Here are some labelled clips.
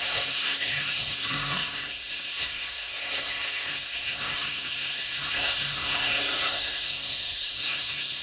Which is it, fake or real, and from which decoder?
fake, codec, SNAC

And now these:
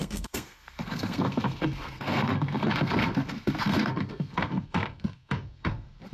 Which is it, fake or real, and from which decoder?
fake, codec, SNAC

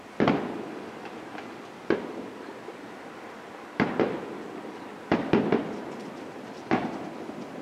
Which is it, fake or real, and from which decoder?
real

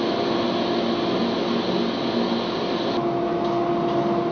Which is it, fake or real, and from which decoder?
real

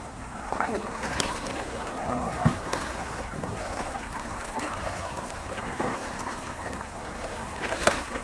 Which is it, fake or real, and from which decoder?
fake, codec, SNAC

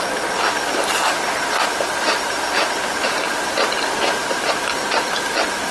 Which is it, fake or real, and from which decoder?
real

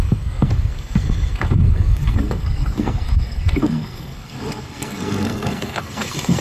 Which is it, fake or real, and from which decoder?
fake, codec, SNAC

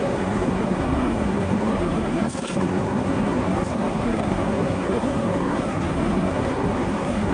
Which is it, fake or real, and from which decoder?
fake, codec, SNAC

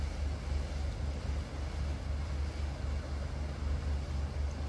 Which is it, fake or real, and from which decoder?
real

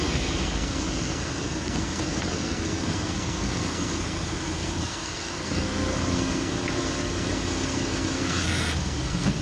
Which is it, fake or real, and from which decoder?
fake, codec, SNAC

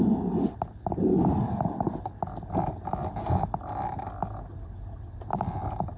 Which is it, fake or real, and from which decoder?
real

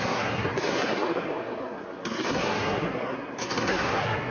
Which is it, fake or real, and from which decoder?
fake, codec, SNAC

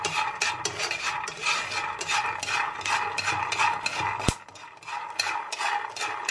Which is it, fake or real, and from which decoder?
real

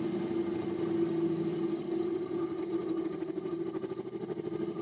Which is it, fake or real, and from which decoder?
real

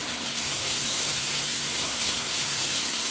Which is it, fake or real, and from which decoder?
fake, codec, SNAC